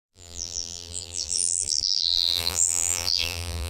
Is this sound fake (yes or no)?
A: yes